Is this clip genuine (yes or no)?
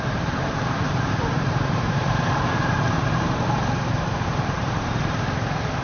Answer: no